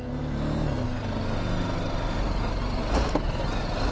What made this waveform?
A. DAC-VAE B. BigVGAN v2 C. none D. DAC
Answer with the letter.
C